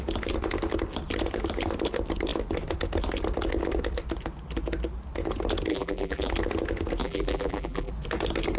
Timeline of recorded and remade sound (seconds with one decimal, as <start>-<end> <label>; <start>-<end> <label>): 0.0-5.7 recorded; 5.7-6.3 remade; 6.3-7.0 recorded; 7.0-7.9 remade; 7.9-8.6 recorded